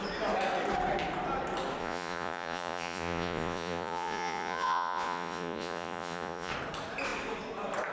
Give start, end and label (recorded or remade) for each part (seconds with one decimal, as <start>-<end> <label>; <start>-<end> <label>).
0.0-1.8 recorded; 1.8-6.5 remade; 6.5-7.9 recorded

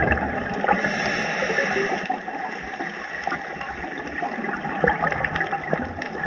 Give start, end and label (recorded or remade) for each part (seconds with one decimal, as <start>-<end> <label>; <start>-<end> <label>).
0.0-6.3 recorded